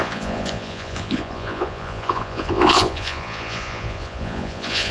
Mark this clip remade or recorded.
remade